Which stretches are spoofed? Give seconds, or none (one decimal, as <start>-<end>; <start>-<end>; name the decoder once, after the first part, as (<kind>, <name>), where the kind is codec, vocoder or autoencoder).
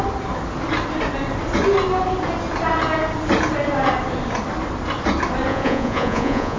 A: 5.5-6.6 (vocoder, Vocos)